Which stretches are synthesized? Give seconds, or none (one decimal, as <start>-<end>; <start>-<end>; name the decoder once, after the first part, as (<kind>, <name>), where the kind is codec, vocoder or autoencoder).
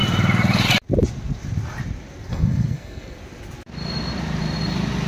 2.3-3.2 (codec, SNAC)